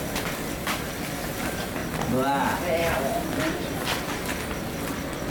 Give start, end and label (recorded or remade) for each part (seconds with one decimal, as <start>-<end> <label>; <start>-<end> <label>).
0.0-5.3 recorded